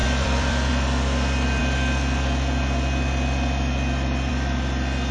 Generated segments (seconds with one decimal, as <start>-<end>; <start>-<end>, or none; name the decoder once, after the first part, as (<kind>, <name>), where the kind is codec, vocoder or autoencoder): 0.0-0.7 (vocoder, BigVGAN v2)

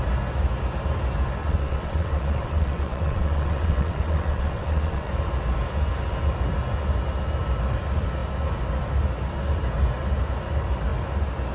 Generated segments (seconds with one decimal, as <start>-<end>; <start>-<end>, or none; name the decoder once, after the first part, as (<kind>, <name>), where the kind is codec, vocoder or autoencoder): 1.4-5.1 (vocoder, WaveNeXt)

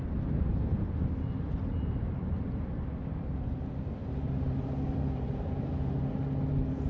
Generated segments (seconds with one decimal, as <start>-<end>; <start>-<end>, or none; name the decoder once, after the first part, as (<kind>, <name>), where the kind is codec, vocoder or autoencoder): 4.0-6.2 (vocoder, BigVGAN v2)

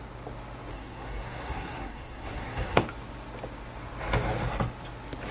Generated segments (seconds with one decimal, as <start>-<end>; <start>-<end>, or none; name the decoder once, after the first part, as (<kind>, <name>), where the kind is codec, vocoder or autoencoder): 0.7-2.8 (codec, SNAC)

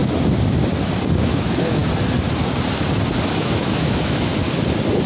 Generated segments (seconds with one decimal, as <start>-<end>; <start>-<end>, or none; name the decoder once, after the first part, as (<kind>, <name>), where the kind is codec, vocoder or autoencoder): 1.3-1.8 (autoencoder, DAC-VAE); 3.4-4.3